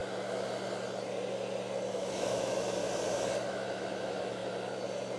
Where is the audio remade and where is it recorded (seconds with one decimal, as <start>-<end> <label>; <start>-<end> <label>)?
0.0-1.9 recorded; 1.9-2.8 remade; 2.8-3.5 recorded; 3.5-4.4 remade; 4.4-5.2 recorded